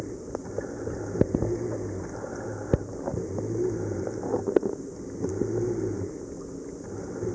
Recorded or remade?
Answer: recorded